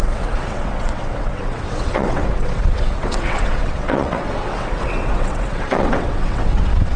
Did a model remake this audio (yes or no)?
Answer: yes